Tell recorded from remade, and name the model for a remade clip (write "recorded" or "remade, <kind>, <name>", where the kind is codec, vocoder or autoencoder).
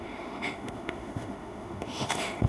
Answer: remade, autoencoder, DAC-VAE